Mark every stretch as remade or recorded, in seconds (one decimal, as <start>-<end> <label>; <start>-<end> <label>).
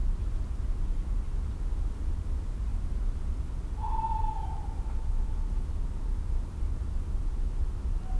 0.0-8.2 recorded